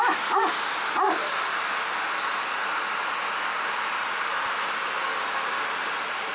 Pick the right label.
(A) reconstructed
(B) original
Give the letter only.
B